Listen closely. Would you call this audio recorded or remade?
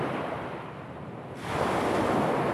recorded